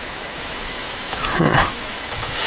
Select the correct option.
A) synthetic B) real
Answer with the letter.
A